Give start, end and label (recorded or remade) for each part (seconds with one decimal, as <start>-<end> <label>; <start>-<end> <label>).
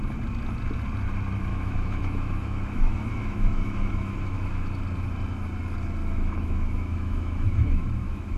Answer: 0.0-1.5 recorded; 1.5-4.8 remade; 4.8-6.0 recorded; 6.0-8.4 remade